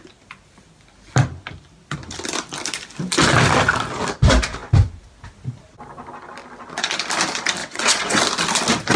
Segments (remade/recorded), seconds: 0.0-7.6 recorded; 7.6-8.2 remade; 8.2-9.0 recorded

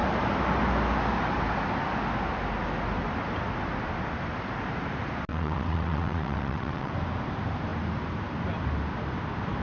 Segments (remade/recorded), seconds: 0.0-5.3 recorded; 5.3-6.9 remade; 6.9-9.6 recorded

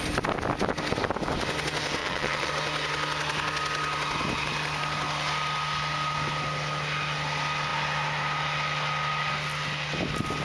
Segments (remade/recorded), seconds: 0.0-2.0 recorded; 2.0-2.5 remade; 2.5-10.4 recorded

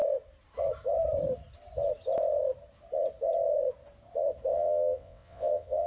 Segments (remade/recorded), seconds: 0.0-4.5 recorded; 4.5-5.9 remade

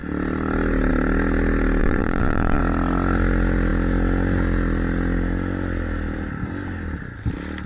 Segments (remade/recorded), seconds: 0.0-1.8 recorded; 1.8-2.6 remade; 2.6-7.7 recorded

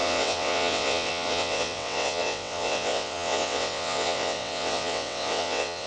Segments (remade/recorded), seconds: 0.0-5.9 remade

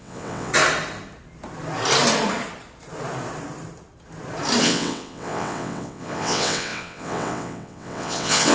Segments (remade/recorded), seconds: 0.0-0.5 remade; 0.5-4.6 recorded; 4.6-8.5 remade